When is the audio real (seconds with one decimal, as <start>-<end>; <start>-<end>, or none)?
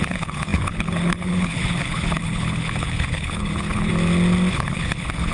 3.9-4.5